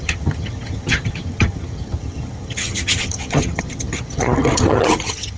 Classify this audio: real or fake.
fake